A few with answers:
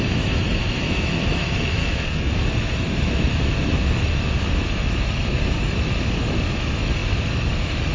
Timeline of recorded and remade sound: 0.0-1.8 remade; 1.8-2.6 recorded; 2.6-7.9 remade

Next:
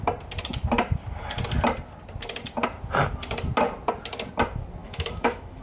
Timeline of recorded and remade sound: 0.0-4.8 recorded; 4.8-5.6 remade

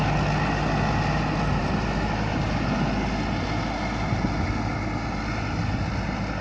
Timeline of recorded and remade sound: 0.0-6.4 recorded